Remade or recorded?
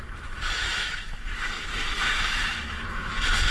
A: remade